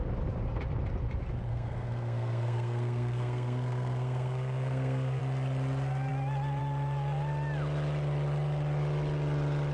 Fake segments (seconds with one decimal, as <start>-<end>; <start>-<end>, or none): 1.5-5.2